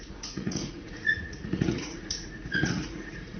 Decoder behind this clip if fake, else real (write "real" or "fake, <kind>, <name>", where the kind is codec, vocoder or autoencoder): fake, vocoder, Vocos